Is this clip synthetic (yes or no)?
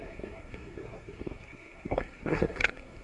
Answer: yes